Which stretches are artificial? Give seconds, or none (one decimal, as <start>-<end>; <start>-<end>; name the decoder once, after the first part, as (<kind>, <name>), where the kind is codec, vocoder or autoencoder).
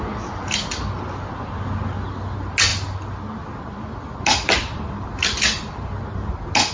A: none